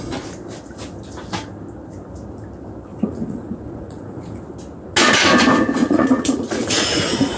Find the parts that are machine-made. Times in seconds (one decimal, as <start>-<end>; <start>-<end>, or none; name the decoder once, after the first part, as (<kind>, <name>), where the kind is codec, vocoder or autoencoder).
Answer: 2.9-4.4 (vocoder, Vocos); 5.8-7.4